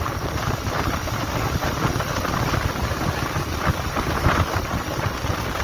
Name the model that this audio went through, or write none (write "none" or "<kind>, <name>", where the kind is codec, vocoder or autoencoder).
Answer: none